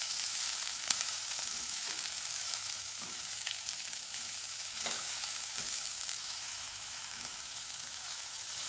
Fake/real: fake